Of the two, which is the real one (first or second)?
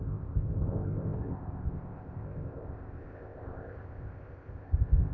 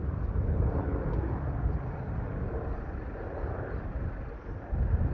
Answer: second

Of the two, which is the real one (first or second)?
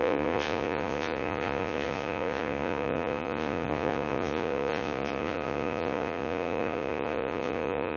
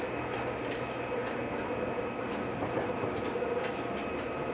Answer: second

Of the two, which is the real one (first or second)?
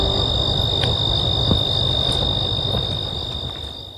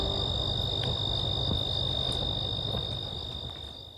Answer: second